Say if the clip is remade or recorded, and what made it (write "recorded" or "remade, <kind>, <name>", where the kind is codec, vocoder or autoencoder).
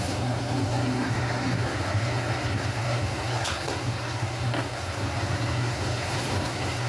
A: remade, codec, SNAC